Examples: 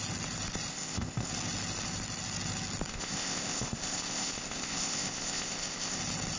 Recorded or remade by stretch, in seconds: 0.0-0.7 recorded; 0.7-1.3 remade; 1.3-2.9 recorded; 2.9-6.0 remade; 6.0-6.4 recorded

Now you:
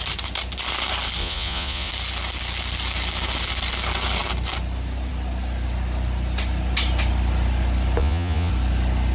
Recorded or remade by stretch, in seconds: 0.0-1.2 recorded; 1.2-1.9 remade; 1.9-8.0 recorded; 8.0-8.5 remade; 8.5-9.1 recorded